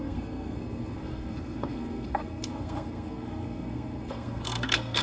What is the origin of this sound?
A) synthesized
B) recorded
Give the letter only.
A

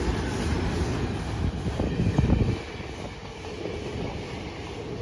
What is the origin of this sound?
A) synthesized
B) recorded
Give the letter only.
B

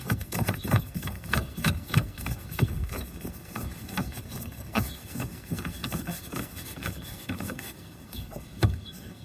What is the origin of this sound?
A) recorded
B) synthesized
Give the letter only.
B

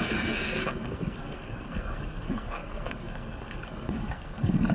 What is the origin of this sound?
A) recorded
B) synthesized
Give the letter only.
B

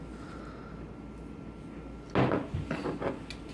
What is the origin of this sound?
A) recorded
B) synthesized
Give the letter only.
A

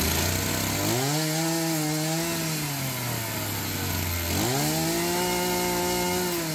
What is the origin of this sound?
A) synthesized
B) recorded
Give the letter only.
B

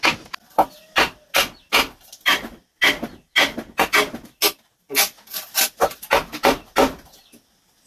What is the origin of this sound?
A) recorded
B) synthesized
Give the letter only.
A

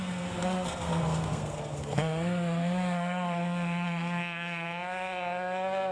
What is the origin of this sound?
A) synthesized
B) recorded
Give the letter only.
A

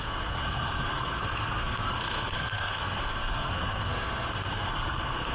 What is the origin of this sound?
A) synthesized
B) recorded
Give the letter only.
A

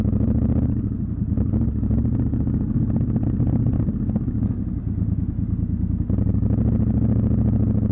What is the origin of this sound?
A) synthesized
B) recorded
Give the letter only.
B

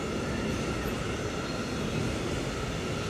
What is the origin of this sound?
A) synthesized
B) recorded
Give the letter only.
B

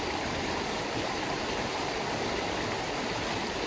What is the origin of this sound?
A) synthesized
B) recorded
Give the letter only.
B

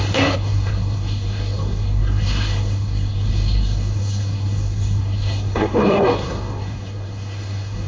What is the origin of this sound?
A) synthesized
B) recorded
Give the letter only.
A